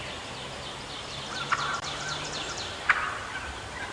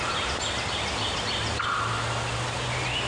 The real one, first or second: second